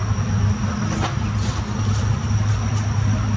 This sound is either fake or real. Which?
real